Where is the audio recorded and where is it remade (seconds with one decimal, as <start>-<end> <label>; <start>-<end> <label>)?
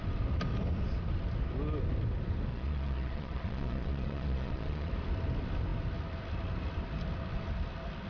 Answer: 0.0-2.5 recorded; 2.5-4.9 remade; 4.9-8.1 recorded